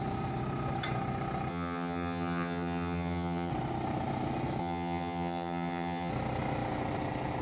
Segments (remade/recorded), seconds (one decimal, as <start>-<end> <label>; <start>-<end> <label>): 0.0-1.5 recorded; 1.5-3.5 remade; 3.5-4.6 recorded; 4.6-6.1 remade; 6.1-7.4 recorded